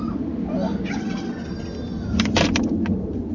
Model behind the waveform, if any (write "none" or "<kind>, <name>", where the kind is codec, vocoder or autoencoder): none